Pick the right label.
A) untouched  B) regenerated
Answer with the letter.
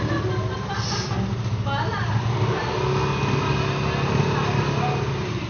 A